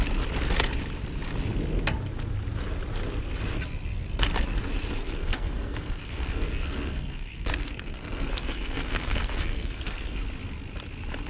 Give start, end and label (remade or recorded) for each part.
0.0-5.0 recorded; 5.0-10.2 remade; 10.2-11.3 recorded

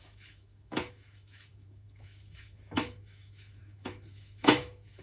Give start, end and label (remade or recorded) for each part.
0.0-5.0 remade